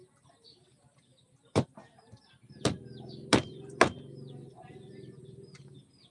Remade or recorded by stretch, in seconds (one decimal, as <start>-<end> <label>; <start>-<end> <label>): 0.0-6.1 recorded